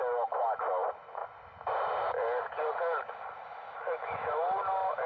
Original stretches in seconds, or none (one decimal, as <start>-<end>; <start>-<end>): 0.0-5.1